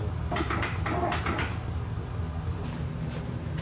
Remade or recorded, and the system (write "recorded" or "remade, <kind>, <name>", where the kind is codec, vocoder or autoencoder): recorded